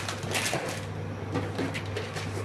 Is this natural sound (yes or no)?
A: yes